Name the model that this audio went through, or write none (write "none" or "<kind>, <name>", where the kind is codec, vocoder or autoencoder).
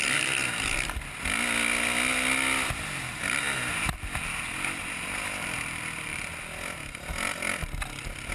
none